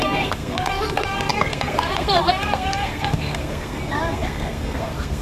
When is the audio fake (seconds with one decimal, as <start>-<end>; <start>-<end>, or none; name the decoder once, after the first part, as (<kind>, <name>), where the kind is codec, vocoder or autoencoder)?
0.0-5.2 (codec, SNAC)